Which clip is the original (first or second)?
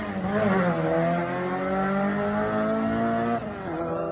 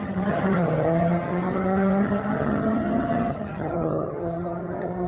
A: first